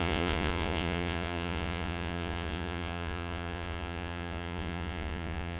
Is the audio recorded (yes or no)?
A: no